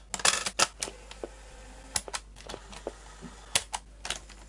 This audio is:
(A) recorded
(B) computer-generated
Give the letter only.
A